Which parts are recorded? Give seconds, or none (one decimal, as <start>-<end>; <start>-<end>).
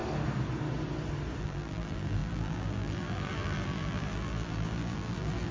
0.0-1.4